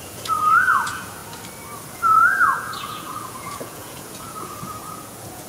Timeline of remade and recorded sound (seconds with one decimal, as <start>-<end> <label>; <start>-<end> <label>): 0.0-1.2 remade; 1.2-1.9 recorded; 1.9-5.5 remade